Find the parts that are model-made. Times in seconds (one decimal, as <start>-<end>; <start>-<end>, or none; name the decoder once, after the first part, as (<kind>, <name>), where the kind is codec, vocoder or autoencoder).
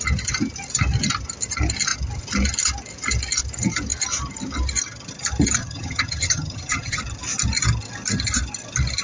5.6-7.0 (vocoder, HiFi-GAN)